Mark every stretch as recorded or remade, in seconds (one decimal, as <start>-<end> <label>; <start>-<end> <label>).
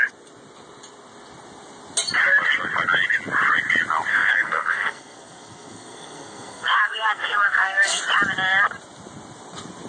0.0-4.1 recorded; 4.1-8.0 remade; 8.0-9.9 recorded